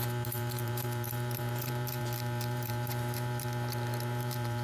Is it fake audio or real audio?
fake